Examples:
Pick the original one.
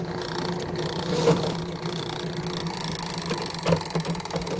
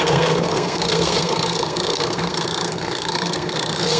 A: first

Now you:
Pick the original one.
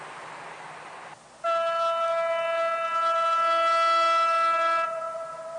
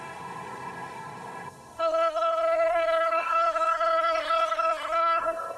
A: first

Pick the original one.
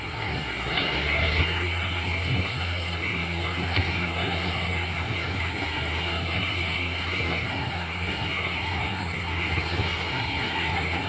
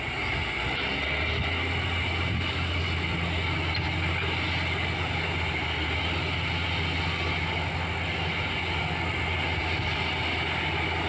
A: second